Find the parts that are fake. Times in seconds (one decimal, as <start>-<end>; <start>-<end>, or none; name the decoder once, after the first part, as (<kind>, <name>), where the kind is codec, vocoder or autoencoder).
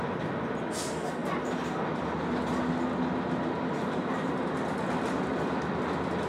none